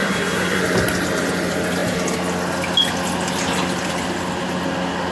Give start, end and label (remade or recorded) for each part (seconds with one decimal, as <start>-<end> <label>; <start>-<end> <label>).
0.0-0.6 remade; 0.6-5.1 recorded